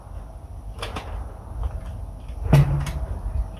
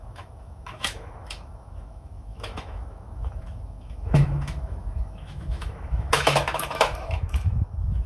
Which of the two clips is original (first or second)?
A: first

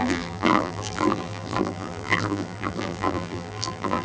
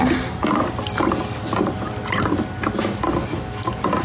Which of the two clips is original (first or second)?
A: second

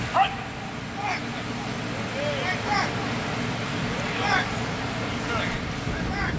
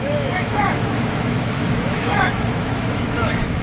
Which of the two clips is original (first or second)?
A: first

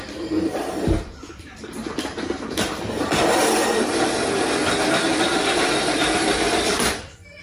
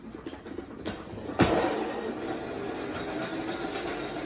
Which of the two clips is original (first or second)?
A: second